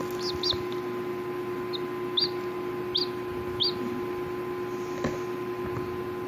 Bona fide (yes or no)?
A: yes